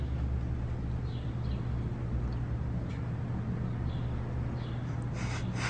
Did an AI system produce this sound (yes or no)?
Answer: no